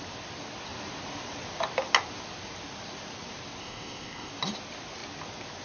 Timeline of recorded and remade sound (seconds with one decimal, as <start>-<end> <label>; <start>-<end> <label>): 0.0-3.6 recorded; 3.6-4.3 remade; 4.3-5.6 recorded